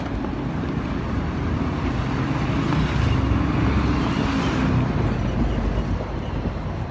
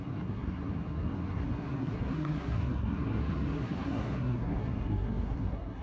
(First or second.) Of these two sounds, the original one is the first